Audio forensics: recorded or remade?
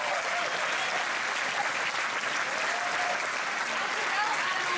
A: recorded